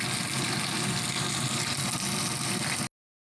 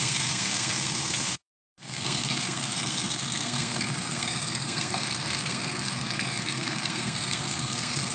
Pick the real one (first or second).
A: first